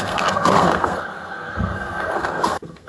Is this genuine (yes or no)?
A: no